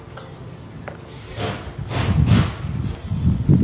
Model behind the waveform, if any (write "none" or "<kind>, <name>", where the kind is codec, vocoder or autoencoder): none